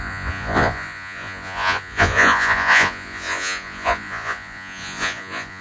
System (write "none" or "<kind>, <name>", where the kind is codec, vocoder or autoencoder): vocoder, Vocos